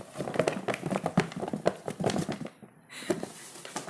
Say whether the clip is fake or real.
real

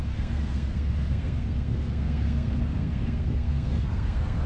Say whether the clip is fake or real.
fake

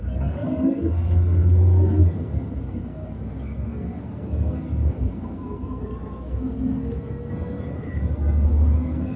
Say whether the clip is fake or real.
fake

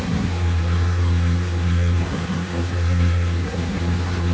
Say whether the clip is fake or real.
fake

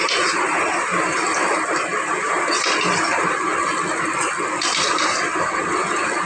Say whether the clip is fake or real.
real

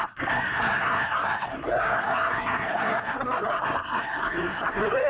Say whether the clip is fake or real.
fake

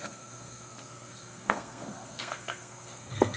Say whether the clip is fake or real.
fake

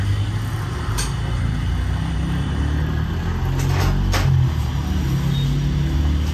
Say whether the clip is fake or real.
real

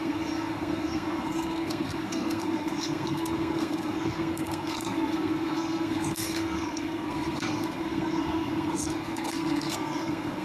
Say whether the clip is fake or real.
fake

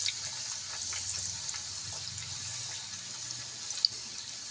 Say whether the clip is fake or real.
real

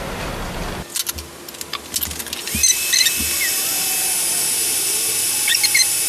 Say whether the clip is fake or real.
real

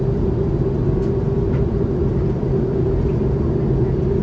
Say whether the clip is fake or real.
real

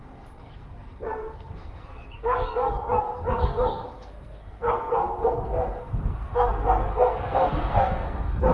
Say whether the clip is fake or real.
fake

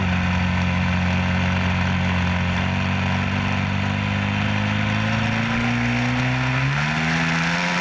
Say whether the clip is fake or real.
real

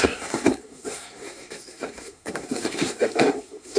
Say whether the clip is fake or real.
fake